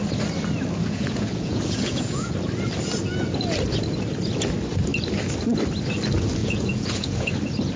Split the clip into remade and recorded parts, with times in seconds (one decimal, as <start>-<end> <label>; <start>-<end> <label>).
0.0-0.8 recorded; 0.8-2.3 remade; 2.3-6.4 recorded; 6.4-7.3 remade; 7.3-7.8 recorded

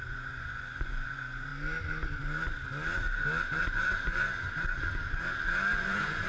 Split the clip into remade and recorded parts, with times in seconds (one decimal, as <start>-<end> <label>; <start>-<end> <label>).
0.0-1.5 remade; 1.5-3.6 recorded; 3.6-4.3 remade; 4.3-5.8 recorded; 5.8-6.3 remade

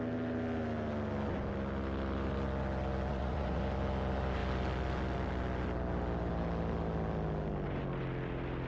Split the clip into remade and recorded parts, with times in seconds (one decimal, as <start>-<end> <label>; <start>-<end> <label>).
0.0-3.1 recorded; 3.1-3.6 remade; 3.6-8.7 recorded

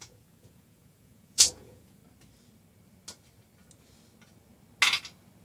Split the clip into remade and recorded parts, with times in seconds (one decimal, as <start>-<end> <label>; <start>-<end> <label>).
0.0-2.0 remade; 2.0-5.4 recorded

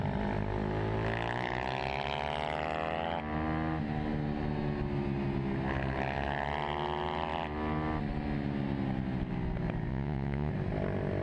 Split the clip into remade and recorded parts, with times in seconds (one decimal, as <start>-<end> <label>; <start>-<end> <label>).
0.0-9.9 recorded; 9.9-10.5 remade; 10.5-11.2 recorded

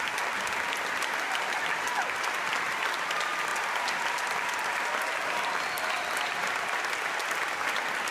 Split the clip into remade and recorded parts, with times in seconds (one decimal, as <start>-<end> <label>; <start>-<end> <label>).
0.0-8.1 recorded